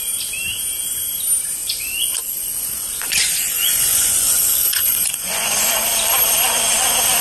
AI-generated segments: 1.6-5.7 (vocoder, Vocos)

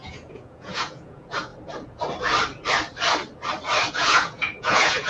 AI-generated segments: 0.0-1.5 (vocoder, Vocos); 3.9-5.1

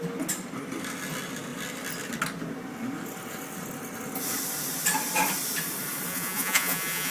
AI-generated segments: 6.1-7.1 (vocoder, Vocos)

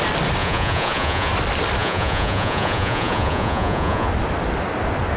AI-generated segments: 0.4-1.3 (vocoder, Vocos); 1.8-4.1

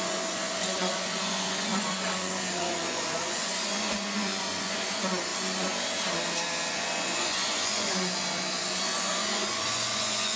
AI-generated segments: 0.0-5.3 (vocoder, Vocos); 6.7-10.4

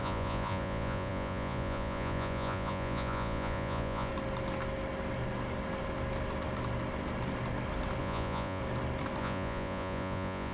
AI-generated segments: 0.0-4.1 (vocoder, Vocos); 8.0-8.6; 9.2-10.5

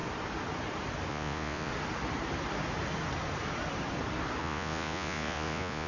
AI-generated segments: 1.1-1.7 (vocoder, Vocos); 4.4-5.9